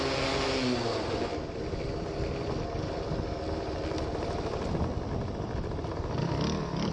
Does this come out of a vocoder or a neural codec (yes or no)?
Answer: no